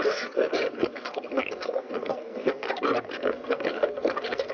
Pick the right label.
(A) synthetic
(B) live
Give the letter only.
A